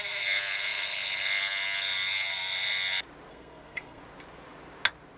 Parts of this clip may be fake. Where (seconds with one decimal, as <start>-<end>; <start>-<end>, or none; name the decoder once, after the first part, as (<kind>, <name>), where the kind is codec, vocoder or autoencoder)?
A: 3.3-4.0 (codec, SNAC)